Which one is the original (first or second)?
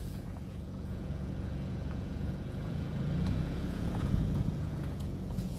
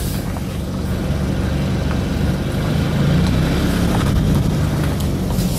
second